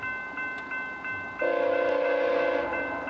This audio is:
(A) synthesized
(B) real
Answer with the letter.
B